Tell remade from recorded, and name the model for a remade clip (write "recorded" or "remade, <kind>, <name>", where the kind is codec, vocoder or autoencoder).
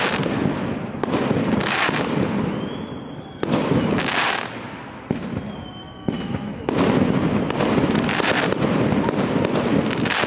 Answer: recorded